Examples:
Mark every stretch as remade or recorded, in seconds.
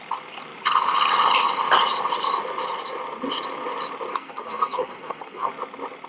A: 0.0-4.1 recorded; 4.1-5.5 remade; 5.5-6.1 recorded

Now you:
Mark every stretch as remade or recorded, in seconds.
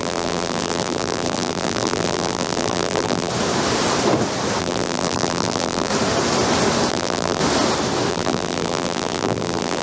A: 0.0-3.3 remade; 3.3-4.6 recorded; 4.6-5.9 remade; 5.9-6.9 recorded; 6.9-7.4 remade; 7.4-8.1 recorded; 8.1-9.8 remade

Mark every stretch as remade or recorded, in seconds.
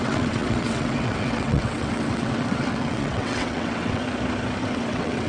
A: 0.0-4.0 remade; 4.0-4.6 recorded; 4.6-5.3 remade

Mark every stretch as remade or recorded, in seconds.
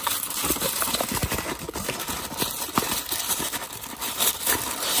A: 0.0-1.2 remade; 1.2-3.8 recorded; 3.8-5.0 remade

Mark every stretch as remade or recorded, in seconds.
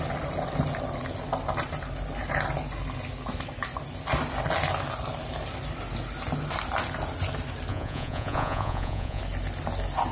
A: 0.0-7.7 recorded; 7.7-9.2 remade; 9.2-10.1 recorded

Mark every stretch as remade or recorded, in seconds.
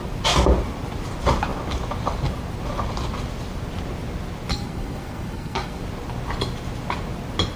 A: 0.0-4.5 recorded; 4.5-5.8 remade; 5.8-7.6 recorded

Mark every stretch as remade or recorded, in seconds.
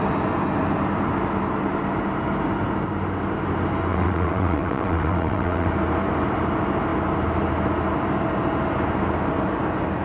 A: 0.0-3.9 recorded; 3.9-5.7 remade; 5.7-10.0 recorded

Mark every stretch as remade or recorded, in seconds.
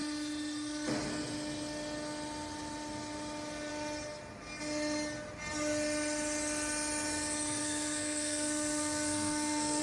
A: 0.0-7.6 recorded; 7.6-9.8 remade